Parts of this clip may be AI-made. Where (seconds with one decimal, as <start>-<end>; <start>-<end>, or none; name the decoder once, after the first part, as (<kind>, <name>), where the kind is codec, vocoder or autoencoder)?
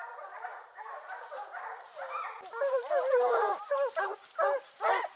0.5-3.6 (vocoder, BigVGAN v2)